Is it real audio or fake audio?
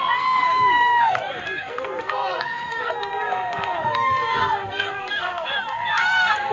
fake